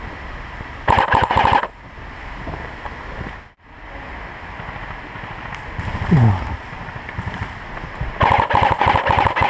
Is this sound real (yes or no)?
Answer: yes